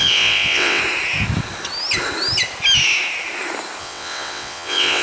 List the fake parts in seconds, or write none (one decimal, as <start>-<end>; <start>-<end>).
0.0-0.8; 3.8-5.0